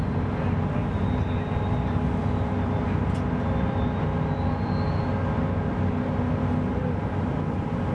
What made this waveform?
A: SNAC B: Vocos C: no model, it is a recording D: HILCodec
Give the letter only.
C